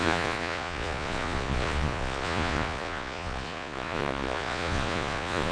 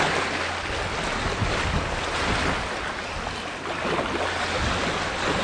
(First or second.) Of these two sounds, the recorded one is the second